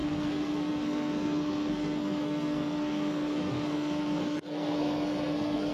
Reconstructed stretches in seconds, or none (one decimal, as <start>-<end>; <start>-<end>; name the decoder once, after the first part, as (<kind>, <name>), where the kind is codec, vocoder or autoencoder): 0.0-5.7 (codec, SNAC)